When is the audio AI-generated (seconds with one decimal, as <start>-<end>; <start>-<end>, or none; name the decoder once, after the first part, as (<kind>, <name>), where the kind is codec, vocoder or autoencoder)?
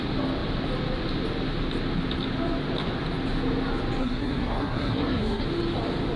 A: 4.0-5.4 (codec, SNAC)